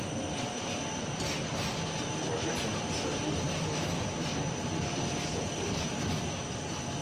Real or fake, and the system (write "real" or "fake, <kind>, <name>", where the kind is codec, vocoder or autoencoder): real